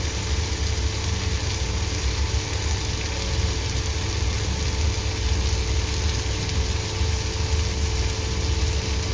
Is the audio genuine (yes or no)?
yes